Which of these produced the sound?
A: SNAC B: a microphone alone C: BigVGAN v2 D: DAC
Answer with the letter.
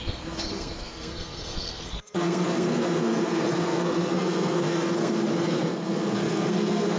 A